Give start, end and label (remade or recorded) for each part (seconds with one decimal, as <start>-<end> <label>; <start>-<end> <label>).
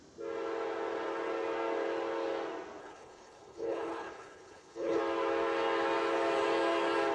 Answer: 0.0-2.8 recorded; 2.8-5.0 remade; 5.0-7.1 recorded